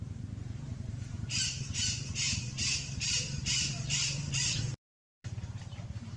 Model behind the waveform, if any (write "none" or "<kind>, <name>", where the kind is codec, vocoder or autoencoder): vocoder, BigVGAN v2